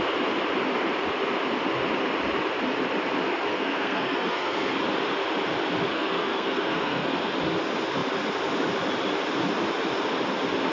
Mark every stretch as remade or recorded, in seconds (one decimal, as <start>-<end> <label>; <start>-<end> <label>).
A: 0.0-3.5 recorded; 3.5-4.8 remade; 4.8-5.8 recorded; 5.8-7.3 remade; 7.3-10.7 recorded